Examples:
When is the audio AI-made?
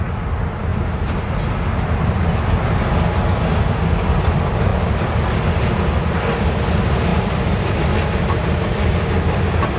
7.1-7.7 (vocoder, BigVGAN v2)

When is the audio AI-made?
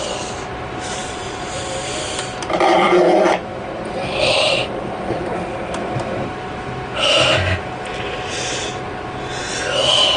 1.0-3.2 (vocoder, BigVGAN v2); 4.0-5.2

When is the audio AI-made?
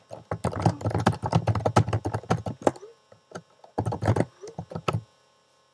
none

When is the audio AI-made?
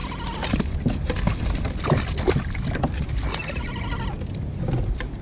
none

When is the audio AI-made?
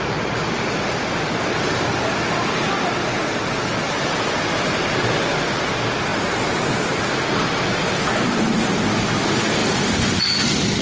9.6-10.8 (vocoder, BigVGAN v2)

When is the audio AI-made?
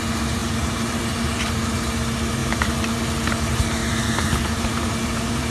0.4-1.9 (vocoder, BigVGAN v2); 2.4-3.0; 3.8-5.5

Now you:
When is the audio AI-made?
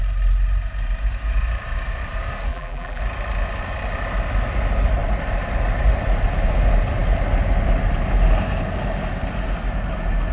2.5-3.0 (vocoder, BigVGAN v2)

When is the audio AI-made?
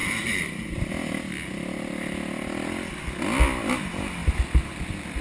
0.0-0.9 (vocoder, BigVGAN v2); 4.2-5.2